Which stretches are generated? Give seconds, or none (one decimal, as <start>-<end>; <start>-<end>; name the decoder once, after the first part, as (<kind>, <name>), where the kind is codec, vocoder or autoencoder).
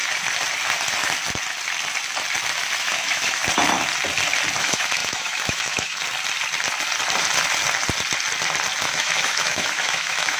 2.8-3.4 (autoencoder, DAC-VAE); 4.6-6.0; 8.8-10.4